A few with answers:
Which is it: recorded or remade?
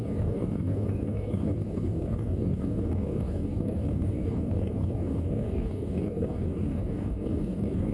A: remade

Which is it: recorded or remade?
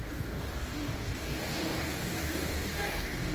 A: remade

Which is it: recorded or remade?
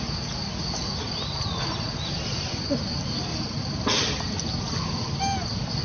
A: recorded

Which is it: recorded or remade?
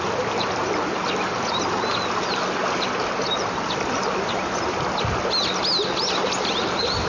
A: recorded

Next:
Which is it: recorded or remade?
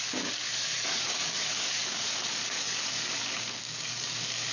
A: remade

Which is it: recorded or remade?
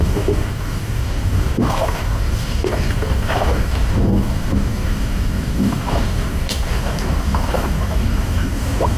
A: remade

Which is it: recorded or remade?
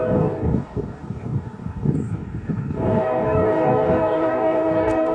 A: remade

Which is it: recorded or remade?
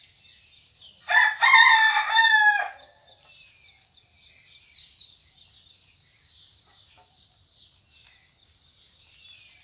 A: recorded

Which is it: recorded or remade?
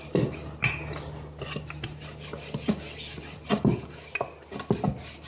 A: recorded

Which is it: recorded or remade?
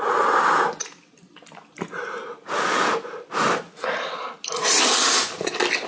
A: recorded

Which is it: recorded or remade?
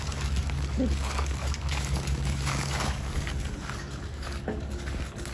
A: remade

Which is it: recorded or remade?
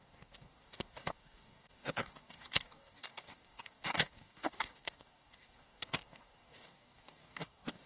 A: remade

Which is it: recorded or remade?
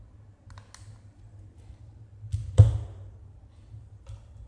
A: recorded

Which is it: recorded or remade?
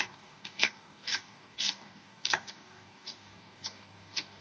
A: remade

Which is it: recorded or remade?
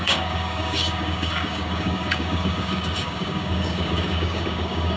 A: remade